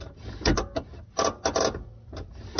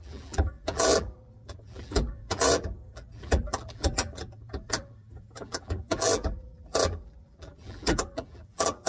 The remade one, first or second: second